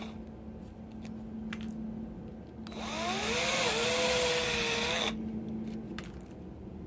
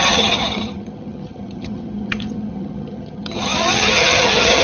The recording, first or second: first